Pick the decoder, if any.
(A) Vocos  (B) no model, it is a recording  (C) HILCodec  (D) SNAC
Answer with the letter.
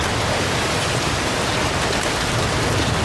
B